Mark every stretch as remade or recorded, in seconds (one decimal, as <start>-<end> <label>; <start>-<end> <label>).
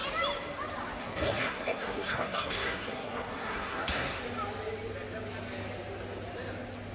0.0-1.0 recorded; 1.0-4.2 remade; 4.2-6.9 recorded